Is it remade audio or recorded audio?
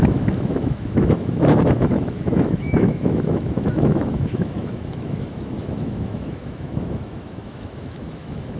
remade